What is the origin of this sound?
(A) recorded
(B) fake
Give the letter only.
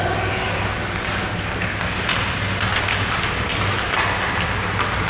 A